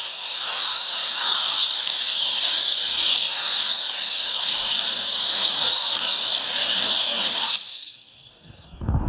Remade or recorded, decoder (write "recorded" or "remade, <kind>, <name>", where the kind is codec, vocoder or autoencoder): remade, codec, DAC